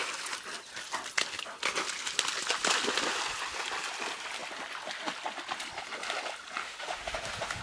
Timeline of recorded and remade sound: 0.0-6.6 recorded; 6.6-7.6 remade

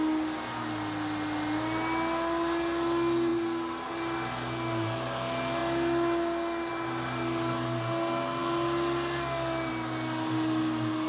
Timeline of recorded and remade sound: 0.0-11.1 recorded

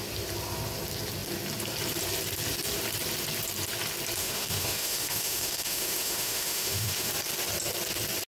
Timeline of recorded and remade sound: 0.0-4.2 recorded; 4.2-7.1 remade; 7.1-8.3 recorded

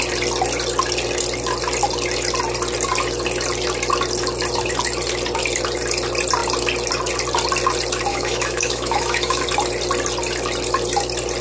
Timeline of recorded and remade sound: 0.0-8.1 recorded; 8.1-9.4 remade; 9.4-11.4 recorded

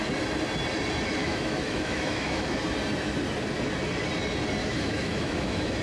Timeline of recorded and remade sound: 0.0-1.2 recorded; 1.2-2.6 remade; 2.6-4.6 recorded; 4.6-5.8 remade

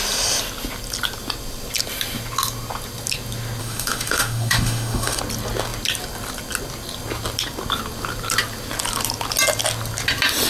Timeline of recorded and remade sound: 0.0-3.6 recorded; 3.6-5.2 remade; 5.2-10.5 recorded